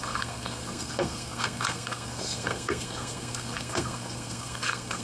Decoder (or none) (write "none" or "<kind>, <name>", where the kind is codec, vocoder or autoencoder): codec, SNAC